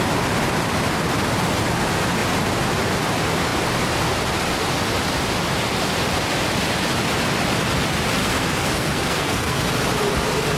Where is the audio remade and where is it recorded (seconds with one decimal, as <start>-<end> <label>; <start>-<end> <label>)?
0.0-8.2 recorded; 8.2-9.7 remade; 9.7-10.6 recorded